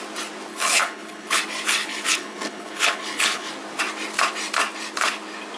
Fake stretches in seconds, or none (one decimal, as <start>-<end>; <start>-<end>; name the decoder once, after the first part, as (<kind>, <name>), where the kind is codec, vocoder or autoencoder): 0.5-1.4 (codec, HILCodec); 1.8-3.5